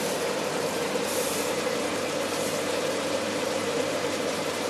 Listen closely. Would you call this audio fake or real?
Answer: fake